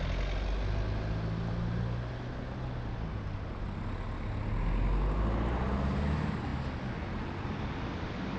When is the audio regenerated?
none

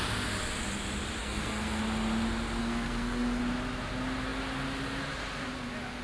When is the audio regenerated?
1.2-1.8; 2.6-3.4